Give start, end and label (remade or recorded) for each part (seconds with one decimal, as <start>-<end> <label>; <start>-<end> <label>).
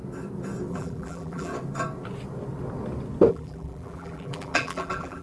0.0-0.7 recorded; 0.7-1.5 remade; 1.5-3.3 recorded; 3.3-5.2 remade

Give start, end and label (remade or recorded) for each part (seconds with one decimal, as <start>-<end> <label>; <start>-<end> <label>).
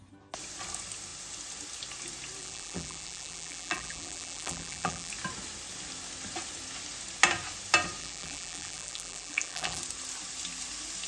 0.0-2.4 recorded; 2.4-5.1 remade; 5.1-8.0 recorded; 8.0-9.8 remade; 9.8-11.1 recorded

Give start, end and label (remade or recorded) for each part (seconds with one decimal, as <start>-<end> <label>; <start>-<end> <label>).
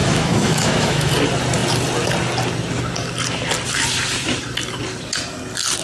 0.0-1.1 remade; 1.1-5.8 recorded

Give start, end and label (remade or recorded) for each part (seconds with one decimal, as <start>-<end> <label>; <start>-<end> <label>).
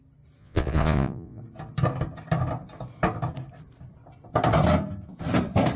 0.0-0.4 recorded; 0.4-1.4 remade; 1.4-5.8 recorded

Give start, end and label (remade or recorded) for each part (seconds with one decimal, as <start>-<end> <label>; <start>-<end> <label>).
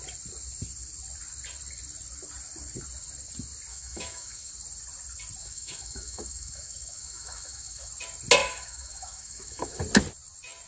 0.0-3.7 recorded; 3.7-4.5 remade; 4.5-5.4 recorded; 5.4-7.9 remade; 7.9-8.4 recorded; 8.4-9.8 remade; 9.8-10.7 recorded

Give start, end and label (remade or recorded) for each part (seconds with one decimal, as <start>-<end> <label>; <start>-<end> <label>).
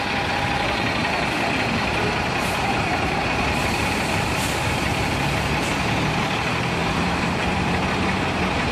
0.0-1.9 recorded; 1.9-4.8 remade; 4.8-6.8 recorded; 6.8-8.7 remade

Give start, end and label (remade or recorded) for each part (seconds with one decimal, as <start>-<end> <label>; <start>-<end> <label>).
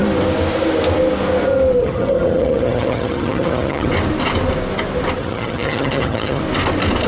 0.0-1.8 recorded; 1.8-3.9 remade; 3.9-5.2 recorded; 5.2-6.4 remade; 6.4-7.1 recorded